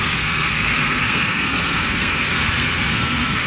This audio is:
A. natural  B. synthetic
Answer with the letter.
B